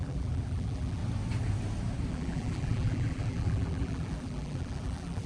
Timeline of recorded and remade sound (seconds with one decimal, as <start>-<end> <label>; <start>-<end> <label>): 0.0-1.0 remade; 1.0-2.1 recorded; 2.1-5.3 remade